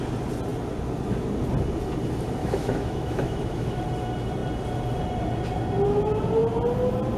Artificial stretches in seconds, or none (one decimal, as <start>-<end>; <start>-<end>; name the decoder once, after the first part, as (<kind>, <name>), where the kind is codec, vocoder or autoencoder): 2.4-3.8 (autoencoder, DAC-VAE)